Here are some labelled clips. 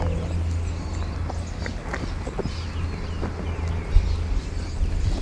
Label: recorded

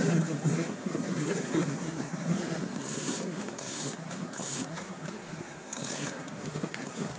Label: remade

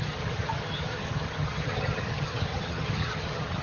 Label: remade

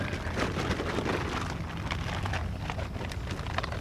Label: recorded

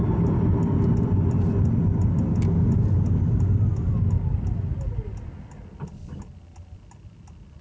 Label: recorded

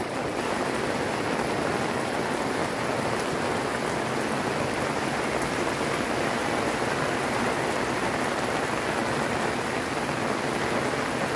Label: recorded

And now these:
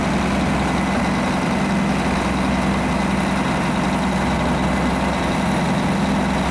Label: recorded